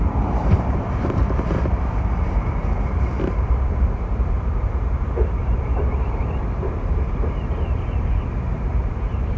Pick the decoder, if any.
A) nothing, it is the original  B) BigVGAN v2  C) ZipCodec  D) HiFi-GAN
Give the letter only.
B